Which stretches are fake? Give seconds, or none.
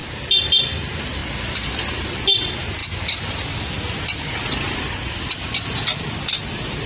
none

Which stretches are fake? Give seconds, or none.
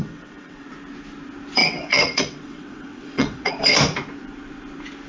0.0-0.7 (vocoder, WaveNeXt); 1.6-3.5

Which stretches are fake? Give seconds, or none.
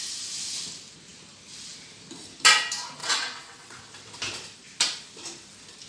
3.0-3.8 (vocoder, WaveNeXt)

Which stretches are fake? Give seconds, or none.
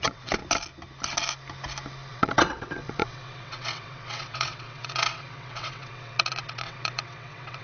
0.0-0.4 (vocoder, WaveNeXt); 2.1-7.6